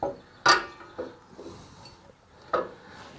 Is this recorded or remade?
recorded